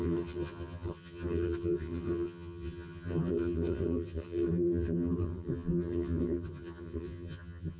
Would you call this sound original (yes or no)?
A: no